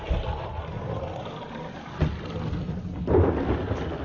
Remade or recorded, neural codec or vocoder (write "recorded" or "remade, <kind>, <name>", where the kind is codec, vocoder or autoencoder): recorded